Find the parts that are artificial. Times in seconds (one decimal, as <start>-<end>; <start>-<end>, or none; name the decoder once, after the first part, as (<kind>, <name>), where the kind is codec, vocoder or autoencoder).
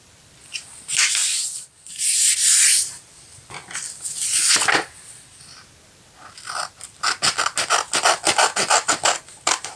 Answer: none